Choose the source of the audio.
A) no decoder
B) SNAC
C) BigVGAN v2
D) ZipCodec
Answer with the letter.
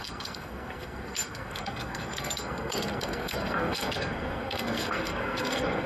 B